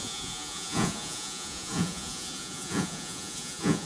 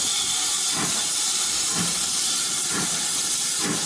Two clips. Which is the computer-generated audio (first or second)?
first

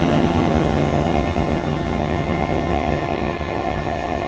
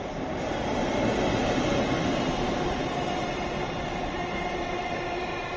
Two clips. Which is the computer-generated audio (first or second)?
first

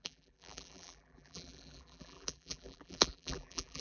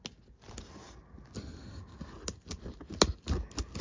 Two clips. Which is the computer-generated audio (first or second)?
first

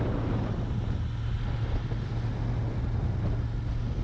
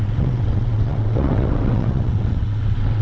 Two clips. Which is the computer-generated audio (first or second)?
second